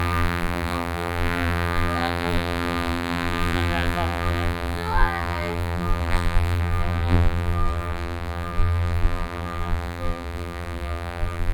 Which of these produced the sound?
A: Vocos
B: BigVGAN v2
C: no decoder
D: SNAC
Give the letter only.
B